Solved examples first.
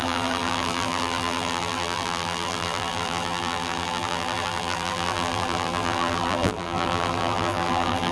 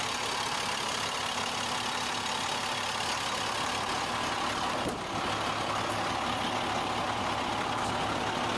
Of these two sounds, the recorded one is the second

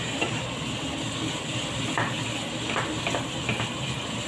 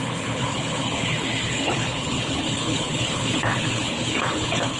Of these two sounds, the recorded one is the first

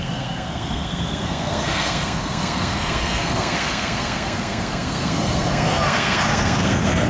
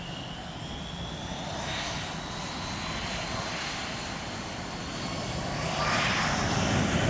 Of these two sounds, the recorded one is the second